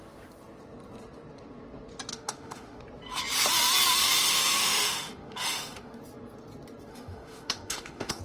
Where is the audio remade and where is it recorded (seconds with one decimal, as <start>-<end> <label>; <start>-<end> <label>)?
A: 0.0-2.1 recorded; 2.1-2.8 remade; 2.8-4.0 recorded; 4.0-6.0 remade; 6.0-6.9 recorded; 6.9-8.2 remade